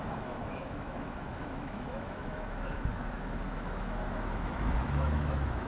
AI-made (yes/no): yes